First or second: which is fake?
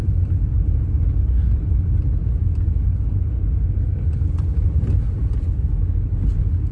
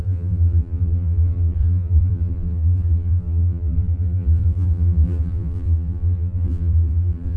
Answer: second